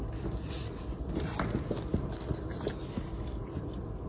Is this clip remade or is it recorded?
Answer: recorded